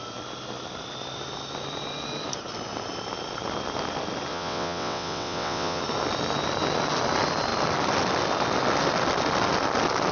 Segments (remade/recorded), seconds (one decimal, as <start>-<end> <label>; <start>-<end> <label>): 0.0-4.3 recorded; 4.3-5.8 remade; 5.8-10.1 recorded